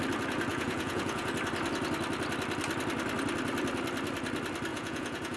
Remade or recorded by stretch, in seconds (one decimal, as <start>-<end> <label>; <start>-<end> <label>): 0.0-0.5 recorded; 0.5-1.3 remade; 1.3-4.7 recorded; 4.7-5.4 remade